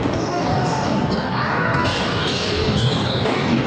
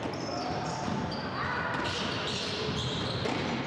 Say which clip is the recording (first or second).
second